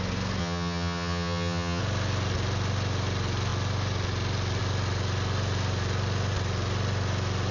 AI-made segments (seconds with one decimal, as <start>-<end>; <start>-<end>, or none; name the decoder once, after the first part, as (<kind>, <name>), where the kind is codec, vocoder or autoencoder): 0.4-1.8 (vocoder, HiFi-GAN)